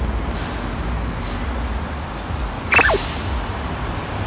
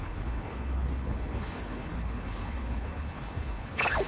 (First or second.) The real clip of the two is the first